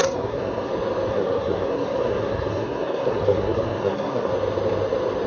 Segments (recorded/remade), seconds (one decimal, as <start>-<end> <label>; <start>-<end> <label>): 0.0-0.7 remade; 0.7-1.1 recorded; 1.1-4.3 remade; 4.3-5.3 recorded